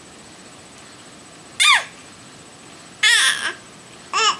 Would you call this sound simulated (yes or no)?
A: no